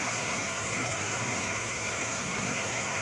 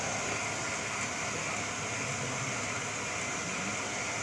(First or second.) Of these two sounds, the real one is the second